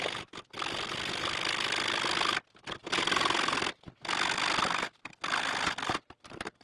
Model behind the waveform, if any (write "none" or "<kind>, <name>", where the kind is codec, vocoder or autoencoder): none